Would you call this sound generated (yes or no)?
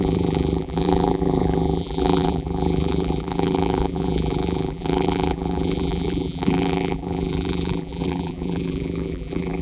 yes